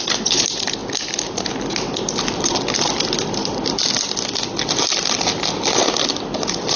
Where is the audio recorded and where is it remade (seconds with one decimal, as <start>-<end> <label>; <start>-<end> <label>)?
0.0-6.8 recorded